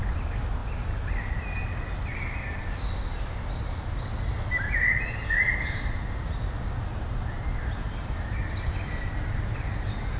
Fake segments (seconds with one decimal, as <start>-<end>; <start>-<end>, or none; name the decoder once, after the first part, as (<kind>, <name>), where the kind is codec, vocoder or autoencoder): none

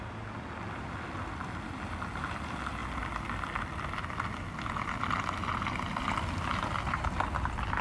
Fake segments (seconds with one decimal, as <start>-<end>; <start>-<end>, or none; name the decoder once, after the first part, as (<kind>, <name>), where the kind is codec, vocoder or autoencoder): none

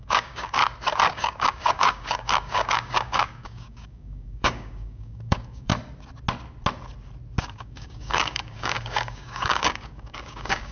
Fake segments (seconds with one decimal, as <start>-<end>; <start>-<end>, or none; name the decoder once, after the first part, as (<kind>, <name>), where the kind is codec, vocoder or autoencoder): 0.0-0.6 (codec, DAC); 1.1-5.7; 7.4-10.7

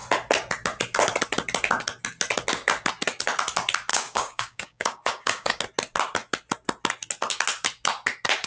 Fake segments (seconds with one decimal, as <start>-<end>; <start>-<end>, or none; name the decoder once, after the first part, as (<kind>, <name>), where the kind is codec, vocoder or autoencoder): 3.9-5.6 (codec, DAC)

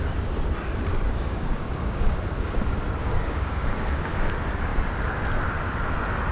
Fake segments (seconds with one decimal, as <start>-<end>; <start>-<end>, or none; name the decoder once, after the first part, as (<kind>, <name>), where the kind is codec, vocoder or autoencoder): 0.9-2.1 (codec, DAC); 3.0-4.3